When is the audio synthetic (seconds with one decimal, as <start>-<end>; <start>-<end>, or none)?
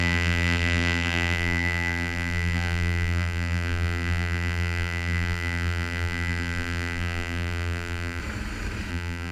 0.0-8.2; 8.9-9.3